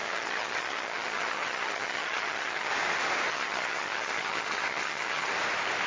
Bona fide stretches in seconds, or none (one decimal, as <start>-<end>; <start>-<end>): 2.7-3.3; 5.3-5.9